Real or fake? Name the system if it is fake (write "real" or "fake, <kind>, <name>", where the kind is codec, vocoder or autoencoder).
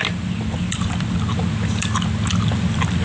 fake, vocoder, BigVGAN v2